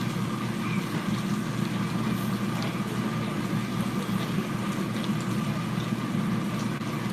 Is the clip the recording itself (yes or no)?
yes